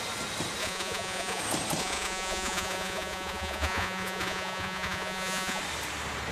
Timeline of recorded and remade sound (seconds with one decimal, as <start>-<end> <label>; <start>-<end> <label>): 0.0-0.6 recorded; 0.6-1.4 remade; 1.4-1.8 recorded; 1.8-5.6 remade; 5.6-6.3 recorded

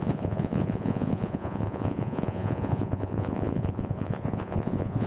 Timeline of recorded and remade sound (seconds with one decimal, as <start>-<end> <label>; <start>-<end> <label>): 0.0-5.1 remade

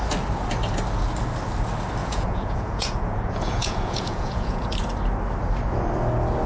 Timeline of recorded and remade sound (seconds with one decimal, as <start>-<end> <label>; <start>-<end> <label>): 0.0-2.0 recorded; 2.0-4.7 remade; 4.7-6.5 recorded

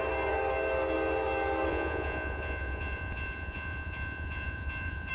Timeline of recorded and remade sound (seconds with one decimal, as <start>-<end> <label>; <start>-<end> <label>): 0.0-1.7 recorded; 1.7-5.1 remade

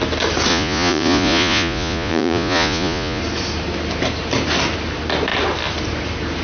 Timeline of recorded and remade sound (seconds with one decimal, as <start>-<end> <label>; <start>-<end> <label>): 0.0-0.5 recorded; 0.5-3.2 remade; 3.2-6.4 recorded

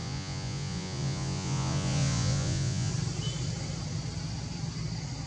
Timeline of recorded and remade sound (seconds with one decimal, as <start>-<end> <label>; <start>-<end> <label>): 0.0-2.9 remade; 2.9-5.3 recorded

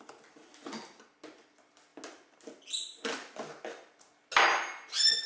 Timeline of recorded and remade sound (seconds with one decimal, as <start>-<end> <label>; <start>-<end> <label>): 0.0-5.3 recorded